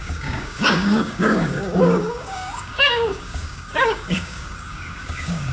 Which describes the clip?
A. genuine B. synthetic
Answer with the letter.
B